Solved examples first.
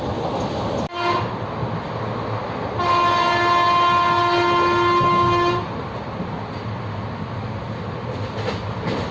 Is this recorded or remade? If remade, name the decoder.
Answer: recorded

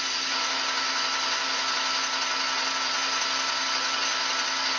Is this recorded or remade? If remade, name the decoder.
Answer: recorded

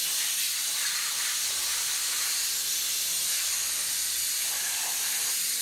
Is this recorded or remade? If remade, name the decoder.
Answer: recorded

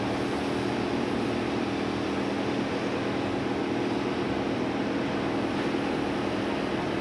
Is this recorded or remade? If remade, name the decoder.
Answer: recorded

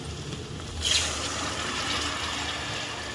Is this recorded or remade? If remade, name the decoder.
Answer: recorded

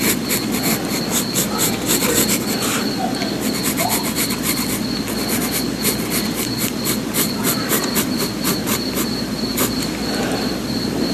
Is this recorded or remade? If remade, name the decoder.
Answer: recorded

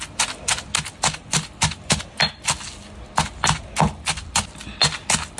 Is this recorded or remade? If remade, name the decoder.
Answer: recorded